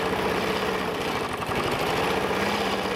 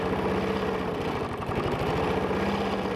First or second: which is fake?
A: first